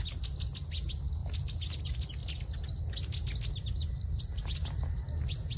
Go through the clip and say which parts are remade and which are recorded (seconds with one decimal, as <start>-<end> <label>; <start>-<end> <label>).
0.0-5.6 recorded